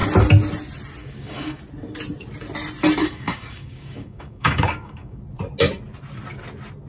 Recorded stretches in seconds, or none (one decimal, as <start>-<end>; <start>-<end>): 0.0-1.0; 1.6-3.0; 5.2-6.9